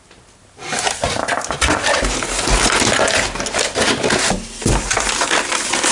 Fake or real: real